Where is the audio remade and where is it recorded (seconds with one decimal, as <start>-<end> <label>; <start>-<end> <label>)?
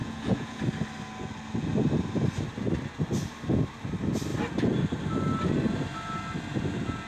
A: 0.0-0.6 remade; 0.6-7.1 recorded